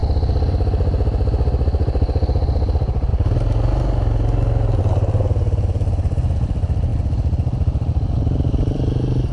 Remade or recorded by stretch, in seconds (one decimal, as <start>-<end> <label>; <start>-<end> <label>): 0.0-9.3 recorded